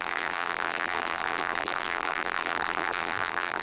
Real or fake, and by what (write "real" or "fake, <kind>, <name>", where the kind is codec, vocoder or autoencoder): fake, vocoder, BigVGAN v2